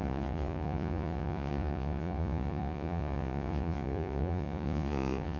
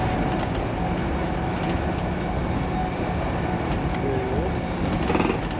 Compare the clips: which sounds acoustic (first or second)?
second